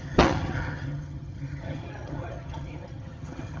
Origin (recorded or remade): remade